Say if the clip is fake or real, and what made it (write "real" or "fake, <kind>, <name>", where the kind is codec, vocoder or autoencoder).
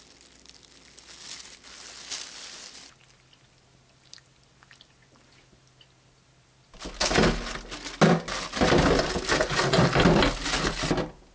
real